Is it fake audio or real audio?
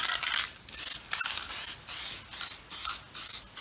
real